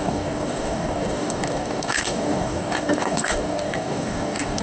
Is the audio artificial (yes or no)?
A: yes